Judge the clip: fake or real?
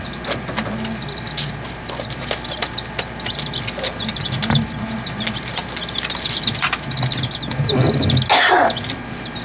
real